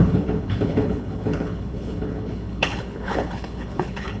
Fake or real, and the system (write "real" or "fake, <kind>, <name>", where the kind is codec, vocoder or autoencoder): fake, codec, HILCodec